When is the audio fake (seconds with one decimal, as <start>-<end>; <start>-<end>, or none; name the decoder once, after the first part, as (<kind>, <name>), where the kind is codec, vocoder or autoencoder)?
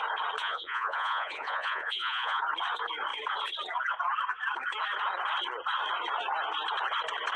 0.4-2.4 (vocoder, Vocos)